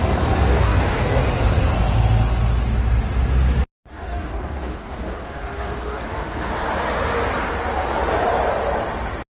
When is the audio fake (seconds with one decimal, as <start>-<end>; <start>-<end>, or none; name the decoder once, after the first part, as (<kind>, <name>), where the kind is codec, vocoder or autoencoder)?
0.5-1.2 (codec, DAC); 3.9-6.5